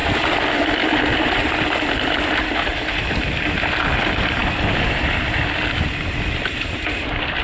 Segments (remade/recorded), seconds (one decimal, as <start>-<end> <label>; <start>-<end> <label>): 0.0-7.4 recorded